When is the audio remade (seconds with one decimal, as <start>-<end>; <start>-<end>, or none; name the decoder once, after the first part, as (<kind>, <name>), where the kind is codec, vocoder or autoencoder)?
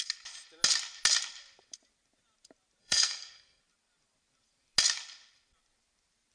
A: 2.8-3.6 (codec, SNAC)